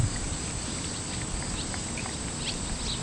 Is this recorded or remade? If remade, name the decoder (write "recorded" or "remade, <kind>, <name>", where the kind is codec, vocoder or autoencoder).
recorded